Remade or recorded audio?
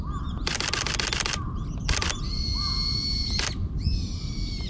recorded